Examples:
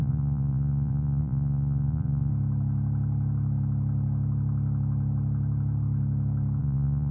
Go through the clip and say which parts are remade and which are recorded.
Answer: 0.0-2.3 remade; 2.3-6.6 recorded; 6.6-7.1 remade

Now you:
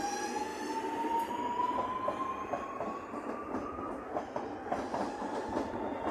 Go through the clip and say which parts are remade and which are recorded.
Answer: 0.0-0.5 recorded; 0.5-4.2 remade; 4.2-6.1 recorded